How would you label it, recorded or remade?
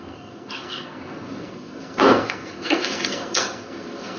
remade